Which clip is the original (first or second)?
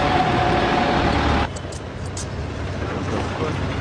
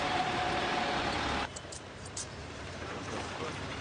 first